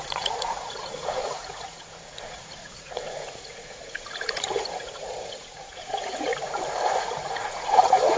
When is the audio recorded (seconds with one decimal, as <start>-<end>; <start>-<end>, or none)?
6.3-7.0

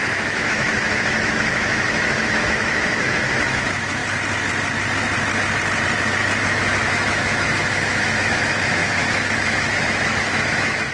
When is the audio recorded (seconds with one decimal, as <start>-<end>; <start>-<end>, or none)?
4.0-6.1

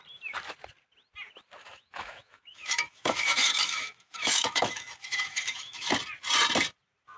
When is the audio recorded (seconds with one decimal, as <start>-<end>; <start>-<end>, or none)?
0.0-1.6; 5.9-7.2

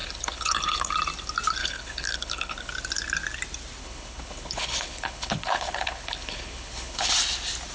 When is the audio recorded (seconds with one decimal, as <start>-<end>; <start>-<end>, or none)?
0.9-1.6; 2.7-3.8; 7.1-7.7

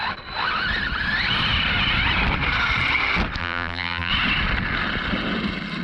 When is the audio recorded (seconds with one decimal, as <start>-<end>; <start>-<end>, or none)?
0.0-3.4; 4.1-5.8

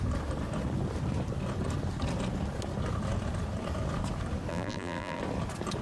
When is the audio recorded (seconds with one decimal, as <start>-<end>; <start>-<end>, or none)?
0.0-4.5; 5.2-5.8

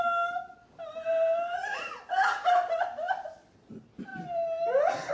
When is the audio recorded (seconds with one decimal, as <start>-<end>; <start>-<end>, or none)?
0.0-5.1

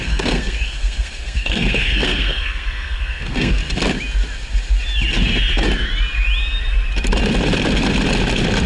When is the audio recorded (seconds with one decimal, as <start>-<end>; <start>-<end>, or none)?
3.6-8.7